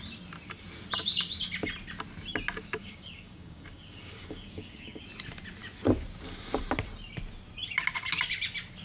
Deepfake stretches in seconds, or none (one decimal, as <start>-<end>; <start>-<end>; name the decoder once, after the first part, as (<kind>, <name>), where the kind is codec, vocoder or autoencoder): 2.8-5.0 (codec, DAC)